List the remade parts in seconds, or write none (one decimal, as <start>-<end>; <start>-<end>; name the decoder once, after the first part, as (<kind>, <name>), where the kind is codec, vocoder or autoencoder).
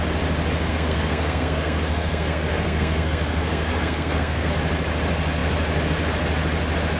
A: 0.7-4.5 (codec, SNAC)